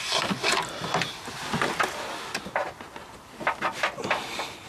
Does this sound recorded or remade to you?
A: recorded